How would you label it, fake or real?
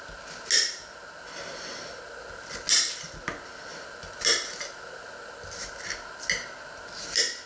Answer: real